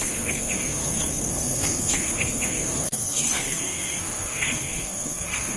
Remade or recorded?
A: remade